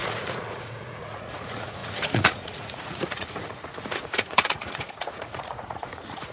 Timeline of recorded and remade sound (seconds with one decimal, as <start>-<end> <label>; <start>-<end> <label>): 0.0-6.3 remade